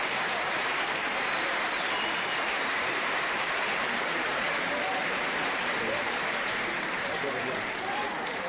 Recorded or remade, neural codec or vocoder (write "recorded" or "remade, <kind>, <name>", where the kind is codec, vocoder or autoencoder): remade, vocoder, BigVGAN v2